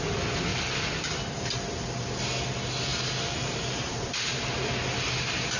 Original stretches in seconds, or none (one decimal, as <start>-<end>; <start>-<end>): 0.0-0.5; 1.4-2.9; 4.7-5.6